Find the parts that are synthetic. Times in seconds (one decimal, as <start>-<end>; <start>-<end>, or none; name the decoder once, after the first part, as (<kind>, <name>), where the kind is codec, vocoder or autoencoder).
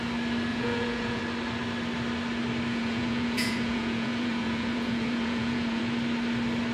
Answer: 0.5-1.2 (vocoder, Vocos); 2.7-5.8